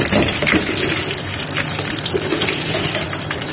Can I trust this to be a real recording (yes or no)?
yes